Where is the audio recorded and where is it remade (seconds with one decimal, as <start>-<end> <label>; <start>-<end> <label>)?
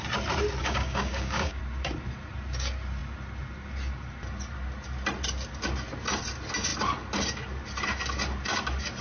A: 0.0-0.6 recorded; 0.6-1.6 remade; 1.6-9.0 recorded